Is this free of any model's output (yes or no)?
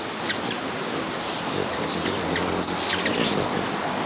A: yes